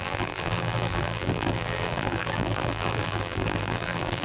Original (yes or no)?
no